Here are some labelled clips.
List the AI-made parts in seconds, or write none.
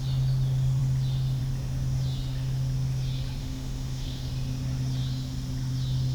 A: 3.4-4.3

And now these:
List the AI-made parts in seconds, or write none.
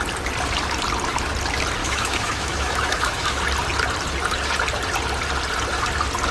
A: 1.8-3.4